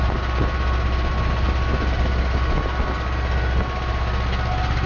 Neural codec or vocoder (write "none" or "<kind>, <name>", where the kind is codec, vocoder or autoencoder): none